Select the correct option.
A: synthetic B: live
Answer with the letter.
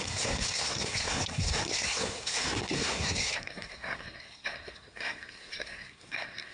A